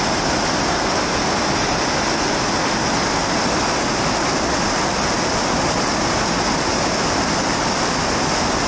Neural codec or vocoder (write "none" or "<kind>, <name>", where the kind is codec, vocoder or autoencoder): none